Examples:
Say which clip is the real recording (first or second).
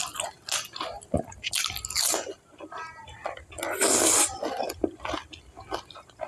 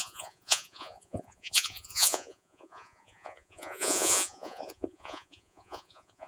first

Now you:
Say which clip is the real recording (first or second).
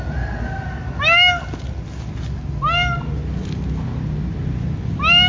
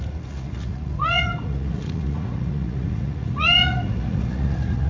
first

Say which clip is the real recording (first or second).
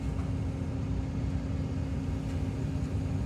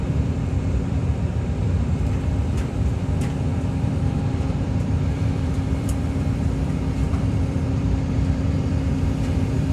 first